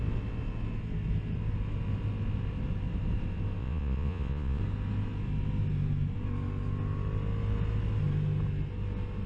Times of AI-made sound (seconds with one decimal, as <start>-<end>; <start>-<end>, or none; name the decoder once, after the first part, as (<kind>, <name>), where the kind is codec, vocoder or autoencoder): 3.6-4.6 (vocoder, Vocos)